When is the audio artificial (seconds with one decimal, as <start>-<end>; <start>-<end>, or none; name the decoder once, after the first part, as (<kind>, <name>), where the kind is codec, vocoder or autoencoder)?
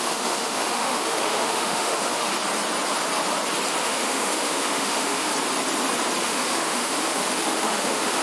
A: 0.0-2.3 (autoencoder, DAC-VAE); 3.8-5.3; 6.2-8.2